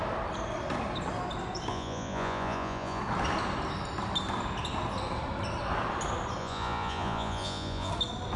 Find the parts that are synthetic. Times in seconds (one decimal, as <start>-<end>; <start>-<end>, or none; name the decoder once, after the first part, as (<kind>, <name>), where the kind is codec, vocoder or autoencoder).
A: 1.7-3.0 (vocoder, Vocos); 6.4-7.9